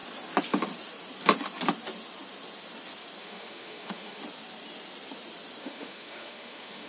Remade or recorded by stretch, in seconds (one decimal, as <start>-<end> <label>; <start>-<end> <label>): 0.0-3.2 recorded; 3.2-4.2 remade; 4.2-5.6 recorded; 5.6-6.9 remade